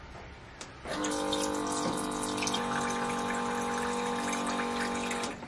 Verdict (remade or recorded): recorded